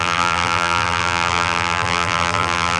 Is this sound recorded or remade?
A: remade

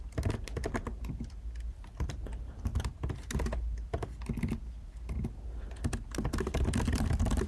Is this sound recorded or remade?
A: recorded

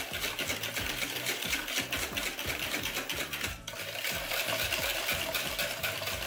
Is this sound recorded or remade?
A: remade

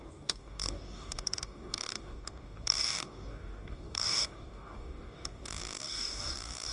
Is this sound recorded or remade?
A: remade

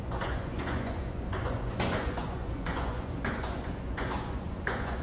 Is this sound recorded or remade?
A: remade